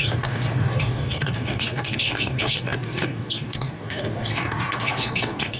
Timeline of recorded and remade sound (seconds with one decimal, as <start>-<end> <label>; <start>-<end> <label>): 0.0-5.6 remade